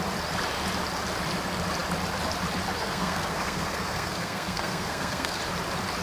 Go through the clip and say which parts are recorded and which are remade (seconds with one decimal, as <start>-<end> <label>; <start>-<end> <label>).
0.0-2.8 recorded; 2.8-5.4 remade; 5.4-6.0 recorded